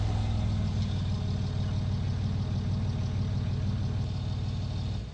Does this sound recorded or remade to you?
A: recorded